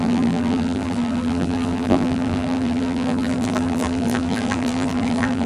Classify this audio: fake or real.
fake